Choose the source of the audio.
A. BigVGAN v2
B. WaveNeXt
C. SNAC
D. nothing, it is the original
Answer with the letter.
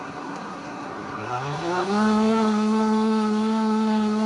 C